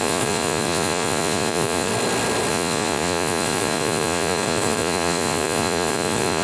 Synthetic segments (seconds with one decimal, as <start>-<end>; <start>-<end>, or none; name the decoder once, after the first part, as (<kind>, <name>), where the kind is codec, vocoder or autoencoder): 0.0-1.9 (vocoder, Vocos); 2.5-6.4